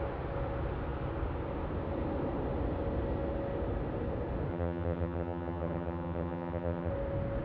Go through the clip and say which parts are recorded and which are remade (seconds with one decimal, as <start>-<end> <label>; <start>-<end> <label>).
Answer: 0.0-4.5 recorded; 4.5-6.9 remade; 6.9-7.4 recorded